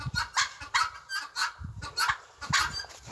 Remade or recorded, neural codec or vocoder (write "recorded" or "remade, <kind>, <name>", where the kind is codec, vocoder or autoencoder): recorded